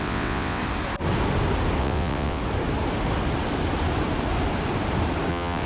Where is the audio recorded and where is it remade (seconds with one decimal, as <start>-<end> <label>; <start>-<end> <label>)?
0.0-0.6 remade; 0.6-1.8 recorded; 1.8-2.4 remade; 2.4-5.3 recorded; 5.3-5.7 remade